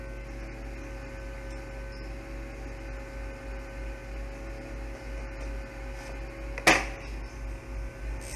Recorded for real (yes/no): yes